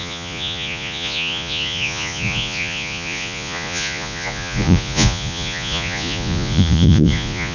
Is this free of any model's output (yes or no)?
no